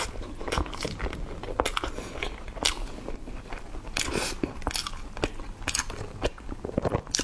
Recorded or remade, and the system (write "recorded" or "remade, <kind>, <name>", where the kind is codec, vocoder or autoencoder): recorded